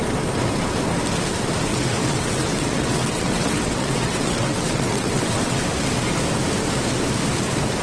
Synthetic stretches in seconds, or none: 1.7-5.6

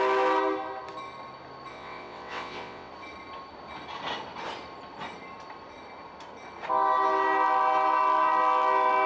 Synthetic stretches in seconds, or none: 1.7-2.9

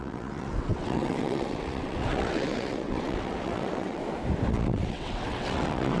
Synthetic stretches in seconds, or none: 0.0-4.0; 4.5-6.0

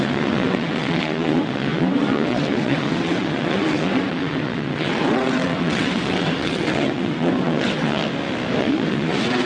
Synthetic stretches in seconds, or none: 0.0-8.0; 8.6-9.5

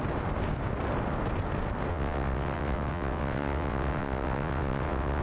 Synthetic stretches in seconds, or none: 1.9-5.2

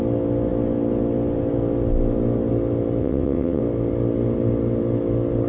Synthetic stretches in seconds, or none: 3.0-3.6